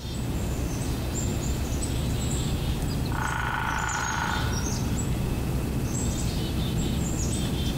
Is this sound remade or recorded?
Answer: recorded